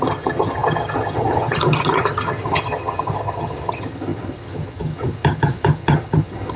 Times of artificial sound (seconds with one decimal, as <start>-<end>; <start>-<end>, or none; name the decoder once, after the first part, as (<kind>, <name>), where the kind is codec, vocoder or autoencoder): 0.0-6.6 (vocoder, HiFi-GAN)